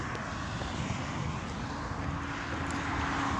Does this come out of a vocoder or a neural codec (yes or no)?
no